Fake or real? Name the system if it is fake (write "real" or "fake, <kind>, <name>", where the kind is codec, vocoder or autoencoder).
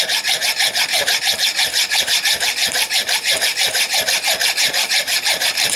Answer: fake, vocoder, BigVGAN v2